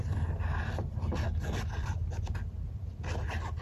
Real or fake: real